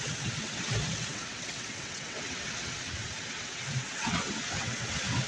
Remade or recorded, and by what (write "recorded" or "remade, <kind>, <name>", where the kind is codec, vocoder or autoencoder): remade, vocoder, WaveNeXt